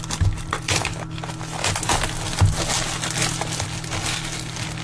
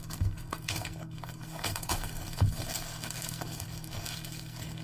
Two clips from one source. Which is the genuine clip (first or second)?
first